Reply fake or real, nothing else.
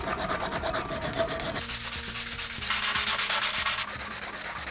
real